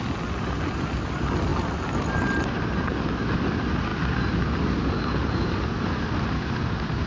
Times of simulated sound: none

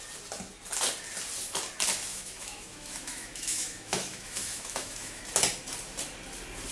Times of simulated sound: 2.1-5.2 (autoencoder, DAC-VAE)

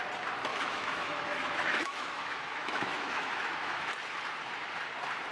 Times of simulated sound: 0.5-3.7 (autoencoder, DAC-VAE)

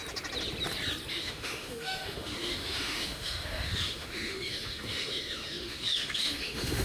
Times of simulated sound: 1.1-6.8 (autoencoder, DAC-VAE)